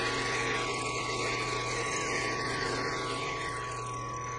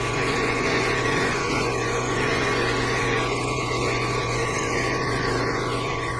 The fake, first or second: second